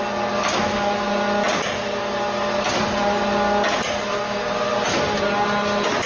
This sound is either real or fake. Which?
real